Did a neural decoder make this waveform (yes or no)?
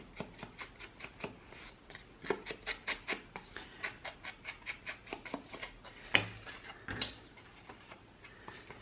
no